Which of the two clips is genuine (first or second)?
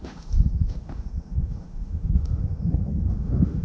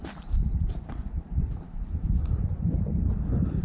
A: second